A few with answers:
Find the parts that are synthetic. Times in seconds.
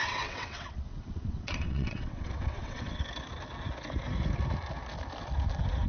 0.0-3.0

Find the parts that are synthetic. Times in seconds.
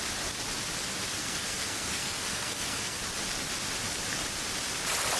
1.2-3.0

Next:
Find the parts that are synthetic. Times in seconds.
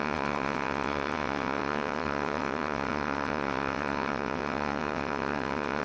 0.0-5.8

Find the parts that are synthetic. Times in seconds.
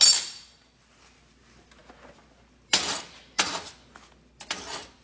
none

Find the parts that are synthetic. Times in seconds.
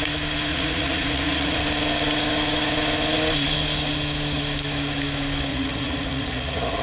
0.5-1.6; 5.5-6.8